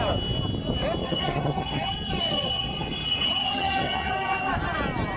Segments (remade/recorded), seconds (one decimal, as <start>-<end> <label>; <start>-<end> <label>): 0.0-1.0 recorded; 1.0-4.1 remade; 4.1-5.2 recorded